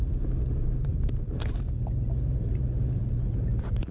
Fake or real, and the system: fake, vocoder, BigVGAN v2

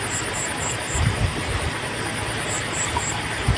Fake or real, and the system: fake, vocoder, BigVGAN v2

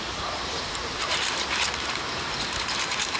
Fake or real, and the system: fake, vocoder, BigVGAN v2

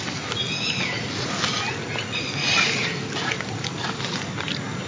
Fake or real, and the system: real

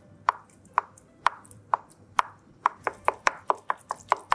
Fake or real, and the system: fake, vocoder, BigVGAN v2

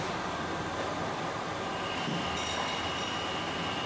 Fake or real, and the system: real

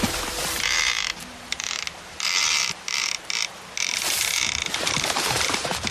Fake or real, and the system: fake, vocoder, BigVGAN v2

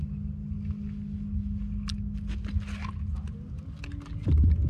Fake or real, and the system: real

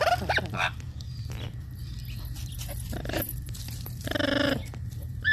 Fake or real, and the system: fake, vocoder, BigVGAN v2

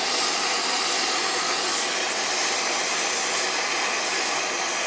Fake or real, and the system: real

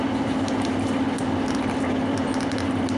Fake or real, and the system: real